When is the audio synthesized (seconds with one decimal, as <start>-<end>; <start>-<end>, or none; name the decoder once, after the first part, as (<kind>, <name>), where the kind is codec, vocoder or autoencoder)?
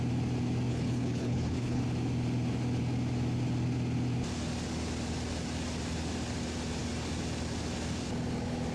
0.7-1.8 (codec, HILCodec)